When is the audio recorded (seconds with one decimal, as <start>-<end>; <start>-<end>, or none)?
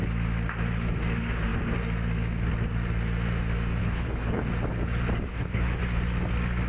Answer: 0.0-3.8; 4.4-5.3; 5.8-6.7